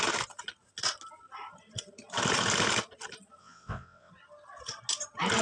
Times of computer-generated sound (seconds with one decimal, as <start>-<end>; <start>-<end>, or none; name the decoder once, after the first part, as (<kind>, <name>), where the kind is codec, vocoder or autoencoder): 3.4-4.1 (vocoder, WaveNeXt)